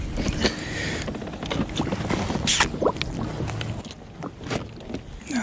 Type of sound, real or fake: real